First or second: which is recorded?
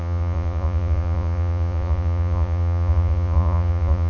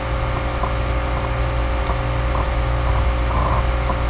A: second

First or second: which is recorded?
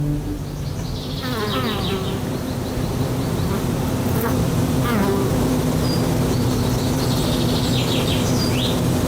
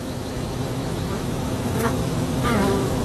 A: first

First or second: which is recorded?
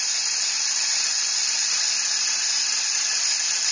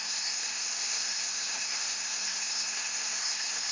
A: first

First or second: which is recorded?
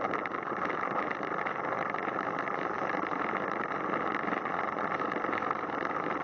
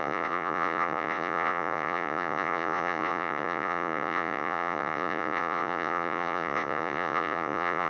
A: first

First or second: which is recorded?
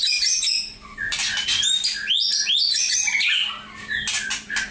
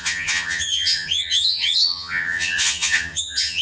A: first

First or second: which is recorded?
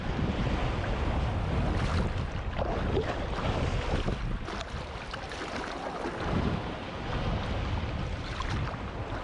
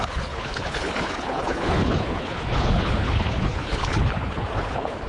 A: first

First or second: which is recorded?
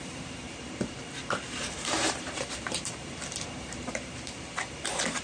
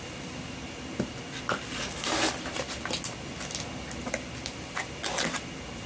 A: second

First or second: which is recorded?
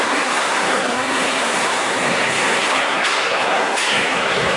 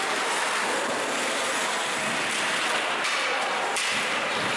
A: second